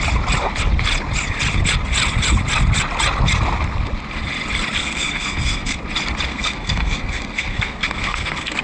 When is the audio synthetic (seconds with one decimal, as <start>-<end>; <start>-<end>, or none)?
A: 4.8-5.8; 6.3-8.6